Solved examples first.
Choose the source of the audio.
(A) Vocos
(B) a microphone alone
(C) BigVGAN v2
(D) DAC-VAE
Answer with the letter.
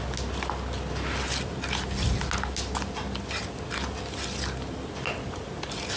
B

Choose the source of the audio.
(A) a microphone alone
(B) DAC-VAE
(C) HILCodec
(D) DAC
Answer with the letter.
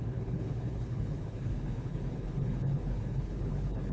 C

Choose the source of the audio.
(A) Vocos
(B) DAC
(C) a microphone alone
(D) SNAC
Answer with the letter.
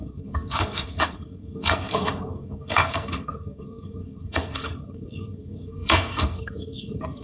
D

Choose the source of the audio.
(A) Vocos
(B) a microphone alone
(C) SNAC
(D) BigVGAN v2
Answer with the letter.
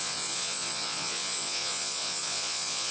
A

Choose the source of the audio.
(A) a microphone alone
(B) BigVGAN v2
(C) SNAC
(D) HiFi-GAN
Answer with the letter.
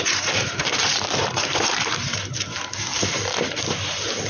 B